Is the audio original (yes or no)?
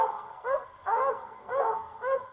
no